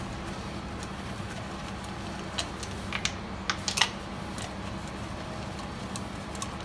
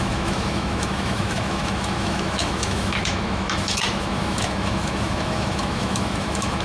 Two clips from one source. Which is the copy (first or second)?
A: second